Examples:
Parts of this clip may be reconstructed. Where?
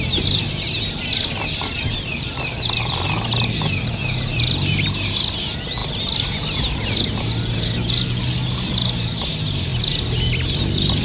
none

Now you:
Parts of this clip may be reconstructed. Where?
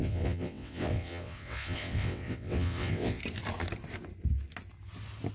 0.0-3.2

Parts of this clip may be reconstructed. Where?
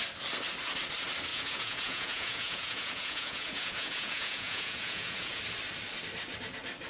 1.3-5.4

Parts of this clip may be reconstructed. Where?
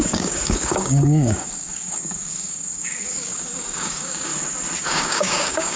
0.0-4.3; 4.8-5.8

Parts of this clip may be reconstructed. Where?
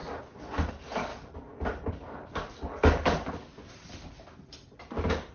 0.7-1.1; 1.9-3.5